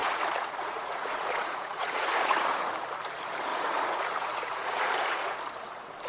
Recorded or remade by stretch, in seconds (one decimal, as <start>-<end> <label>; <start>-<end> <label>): 0.0-2.7 remade; 2.7-3.5 recorded; 3.5-5.4 remade; 5.4-6.1 recorded